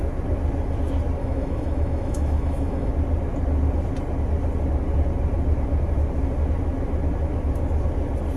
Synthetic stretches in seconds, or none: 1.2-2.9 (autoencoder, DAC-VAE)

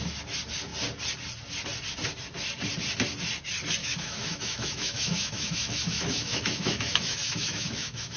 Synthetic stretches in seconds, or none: 3.8-8.2 (autoencoder, DAC-VAE)

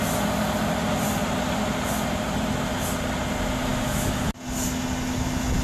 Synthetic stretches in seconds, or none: 3.7-4.3 (autoencoder, DAC-VAE)

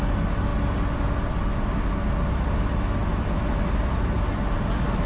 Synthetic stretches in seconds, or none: none

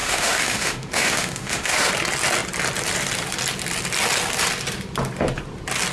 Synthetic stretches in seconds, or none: 0.0-1.9 (autoencoder, DAC-VAE)

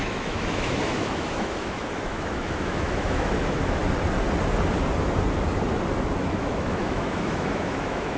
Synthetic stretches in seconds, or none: 0.0-3.8 (autoencoder, DAC-VAE); 6.3-8.2

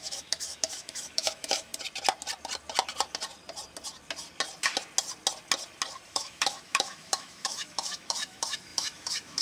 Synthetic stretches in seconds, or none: 0.0-1.7 (autoencoder, DAC-VAE); 6.1-9.4

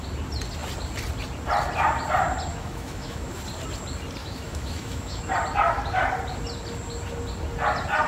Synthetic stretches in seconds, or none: 2.5-3.4 (autoencoder, DAC-VAE); 4.2-5.2